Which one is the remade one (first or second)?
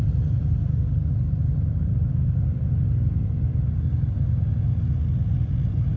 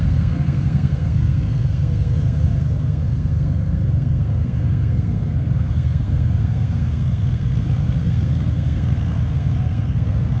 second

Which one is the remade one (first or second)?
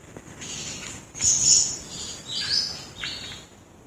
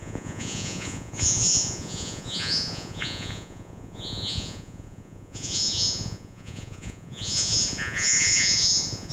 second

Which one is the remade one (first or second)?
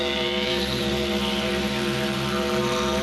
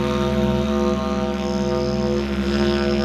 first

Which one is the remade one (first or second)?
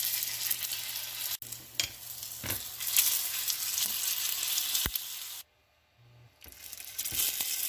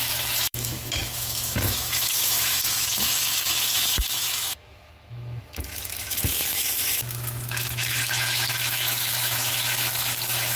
second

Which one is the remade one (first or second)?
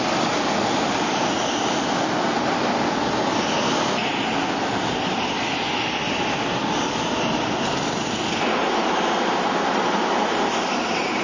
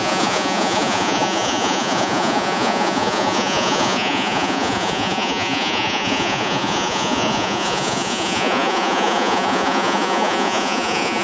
second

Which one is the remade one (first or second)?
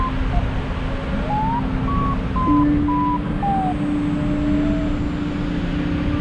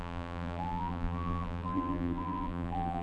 second